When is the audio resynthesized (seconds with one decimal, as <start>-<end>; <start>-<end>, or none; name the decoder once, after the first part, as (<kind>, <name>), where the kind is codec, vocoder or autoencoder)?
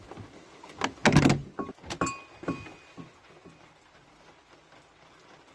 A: none